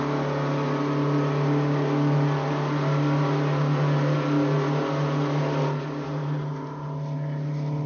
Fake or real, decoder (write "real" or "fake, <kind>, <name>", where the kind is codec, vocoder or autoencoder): real